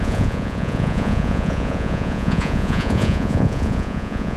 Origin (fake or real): fake